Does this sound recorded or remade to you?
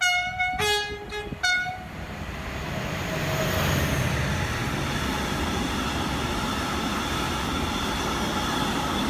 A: recorded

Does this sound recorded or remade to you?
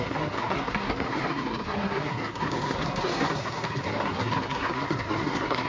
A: remade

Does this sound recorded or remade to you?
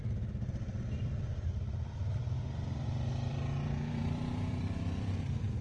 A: remade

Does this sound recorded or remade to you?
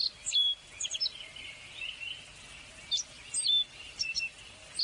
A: recorded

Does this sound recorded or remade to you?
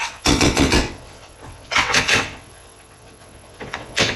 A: remade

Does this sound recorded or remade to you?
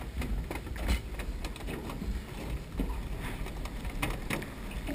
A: recorded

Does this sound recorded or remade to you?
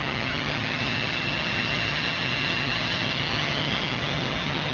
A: remade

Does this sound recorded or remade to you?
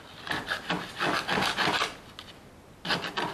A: recorded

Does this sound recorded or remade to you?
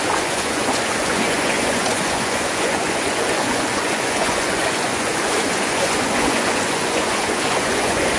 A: remade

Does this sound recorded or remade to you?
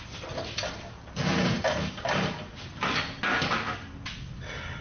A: recorded